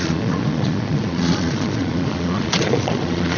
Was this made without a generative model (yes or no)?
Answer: no